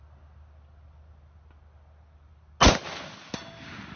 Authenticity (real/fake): real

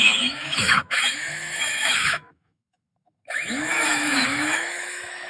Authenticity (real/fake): fake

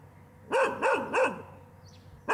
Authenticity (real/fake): real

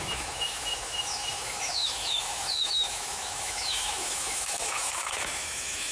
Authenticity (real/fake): fake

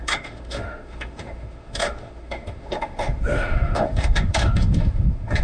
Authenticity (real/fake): fake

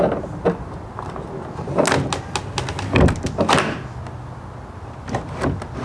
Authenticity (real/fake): real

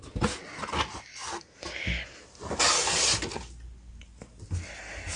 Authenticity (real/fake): real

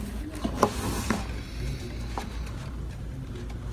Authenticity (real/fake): real